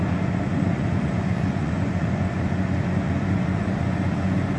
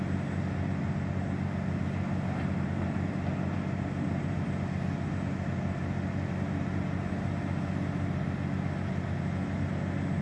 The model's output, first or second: first